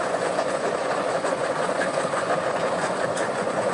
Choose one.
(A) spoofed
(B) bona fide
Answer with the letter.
A